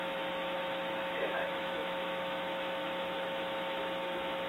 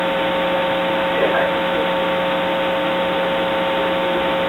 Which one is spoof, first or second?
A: first